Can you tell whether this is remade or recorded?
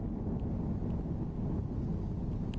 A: recorded